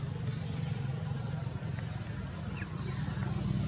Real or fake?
real